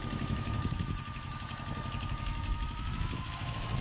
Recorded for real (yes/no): no